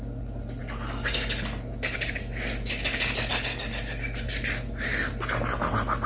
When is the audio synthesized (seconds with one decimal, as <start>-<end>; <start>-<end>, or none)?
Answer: none